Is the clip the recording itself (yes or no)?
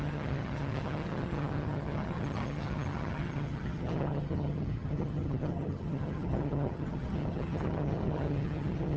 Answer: no